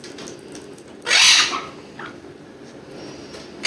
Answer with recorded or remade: recorded